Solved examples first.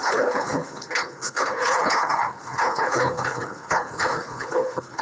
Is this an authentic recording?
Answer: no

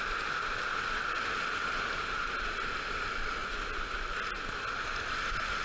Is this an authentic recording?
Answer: yes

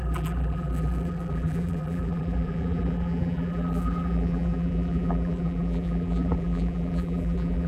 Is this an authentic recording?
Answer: no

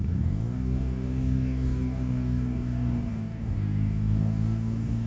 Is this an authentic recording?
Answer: no